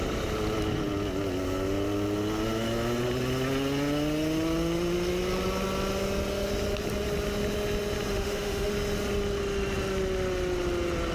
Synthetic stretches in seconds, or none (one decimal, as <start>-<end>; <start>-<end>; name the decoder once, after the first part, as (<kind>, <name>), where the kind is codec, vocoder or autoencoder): 8.1-8.7 (autoencoder, DAC-VAE)